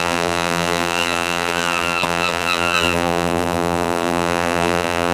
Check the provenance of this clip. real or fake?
fake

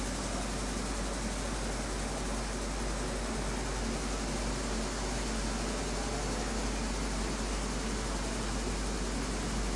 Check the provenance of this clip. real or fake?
real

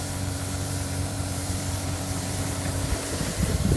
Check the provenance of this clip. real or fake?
fake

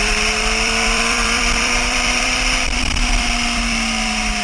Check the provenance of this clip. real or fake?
fake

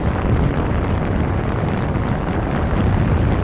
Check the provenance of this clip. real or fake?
real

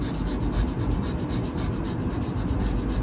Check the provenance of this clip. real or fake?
real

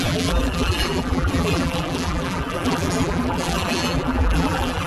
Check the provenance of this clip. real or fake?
fake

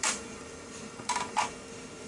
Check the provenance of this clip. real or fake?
fake